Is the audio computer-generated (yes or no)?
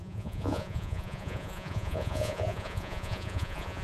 yes